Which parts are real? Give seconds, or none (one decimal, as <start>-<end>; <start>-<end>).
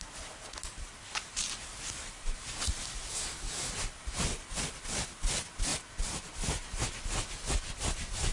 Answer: 0.0-3.1; 3.7-8.3